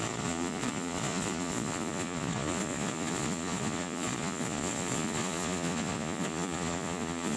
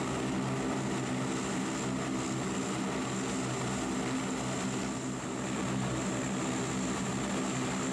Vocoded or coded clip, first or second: first